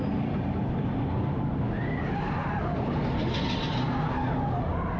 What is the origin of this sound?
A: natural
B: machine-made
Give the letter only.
A